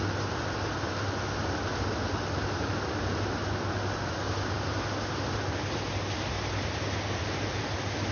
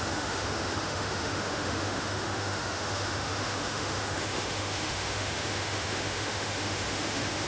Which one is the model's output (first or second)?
second